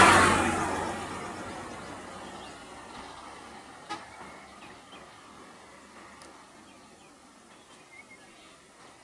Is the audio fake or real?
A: real